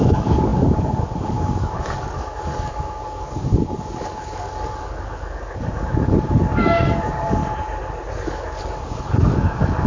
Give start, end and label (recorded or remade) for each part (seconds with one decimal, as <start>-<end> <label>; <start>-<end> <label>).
0.0-7.4 remade; 7.4-8.1 recorded; 8.1-9.9 remade